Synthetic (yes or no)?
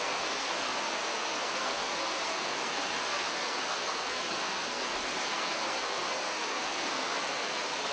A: yes